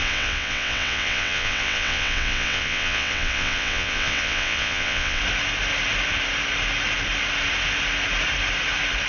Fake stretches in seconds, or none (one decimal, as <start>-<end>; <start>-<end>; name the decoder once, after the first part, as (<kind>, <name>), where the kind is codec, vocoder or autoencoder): 0.0-5.2 (vocoder, WaveNeXt)